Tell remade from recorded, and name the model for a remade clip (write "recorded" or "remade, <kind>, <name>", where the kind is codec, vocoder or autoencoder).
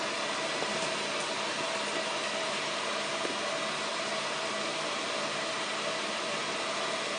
recorded